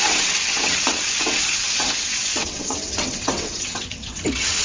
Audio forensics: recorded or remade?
remade